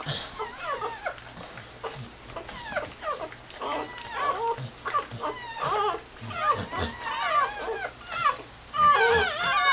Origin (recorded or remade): recorded